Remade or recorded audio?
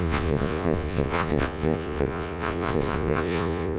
remade